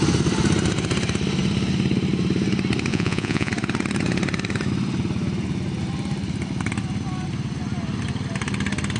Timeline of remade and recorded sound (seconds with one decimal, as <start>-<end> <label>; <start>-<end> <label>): 0.0-2.9 recorded; 2.9-3.5 remade; 3.5-9.0 recorded